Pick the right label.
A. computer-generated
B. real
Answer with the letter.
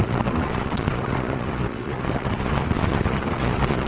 A